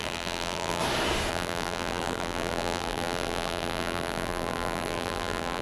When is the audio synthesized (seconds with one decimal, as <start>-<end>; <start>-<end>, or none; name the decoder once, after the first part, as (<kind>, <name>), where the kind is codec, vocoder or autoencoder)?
0.0-0.8 (vocoder, BigVGAN v2); 1.3-5.6